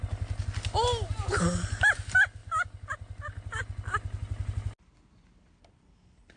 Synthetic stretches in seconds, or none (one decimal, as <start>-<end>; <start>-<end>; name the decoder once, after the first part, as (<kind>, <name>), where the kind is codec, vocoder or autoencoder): none